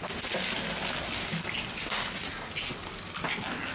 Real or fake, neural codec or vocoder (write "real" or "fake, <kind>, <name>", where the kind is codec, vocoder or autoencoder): real